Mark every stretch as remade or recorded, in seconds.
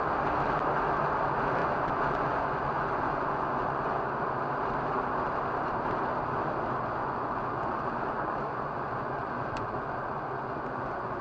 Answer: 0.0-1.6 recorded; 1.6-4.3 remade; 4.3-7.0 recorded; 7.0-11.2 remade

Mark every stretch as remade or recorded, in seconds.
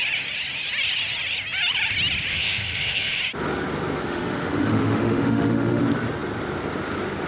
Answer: 0.0-2.3 recorded; 2.3-3.2 remade; 3.2-4.0 recorded; 4.0-5.8 remade; 5.8-7.3 recorded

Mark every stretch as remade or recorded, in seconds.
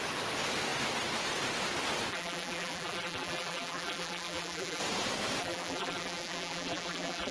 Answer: 0.0-2.1 recorded; 2.1-4.8 remade; 4.8-5.4 recorded; 5.4-7.3 remade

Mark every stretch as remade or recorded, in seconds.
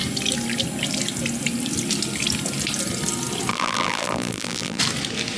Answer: 0.0-3.5 recorded; 3.5-4.8 remade; 4.8-5.4 recorded